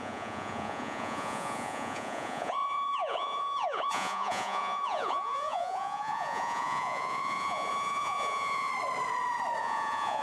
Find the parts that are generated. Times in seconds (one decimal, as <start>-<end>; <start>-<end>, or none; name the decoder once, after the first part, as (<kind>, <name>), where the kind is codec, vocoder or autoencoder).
0.0-8.7 (vocoder, Vocos); 9.6-10.2